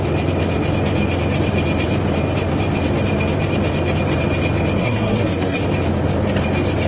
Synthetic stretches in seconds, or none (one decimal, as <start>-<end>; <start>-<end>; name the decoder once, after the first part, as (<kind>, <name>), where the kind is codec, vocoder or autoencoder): 4.8-5.6 (codec, SNAC)